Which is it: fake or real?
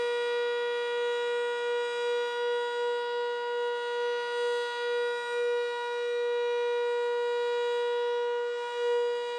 real